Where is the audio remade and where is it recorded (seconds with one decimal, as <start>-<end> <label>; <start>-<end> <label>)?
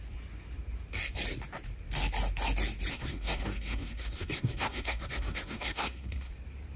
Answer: 0.0-2.9 recorded; 2.9-6.3 remade; 6.3-6.8 recorded